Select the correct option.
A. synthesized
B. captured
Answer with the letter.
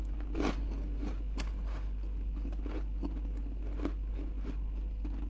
B